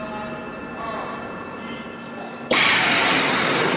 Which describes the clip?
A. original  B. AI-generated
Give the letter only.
A